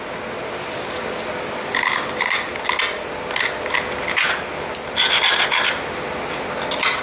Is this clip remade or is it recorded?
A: recorded